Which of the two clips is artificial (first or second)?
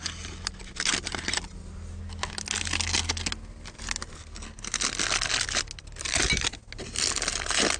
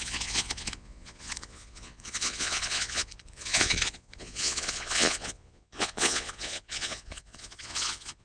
second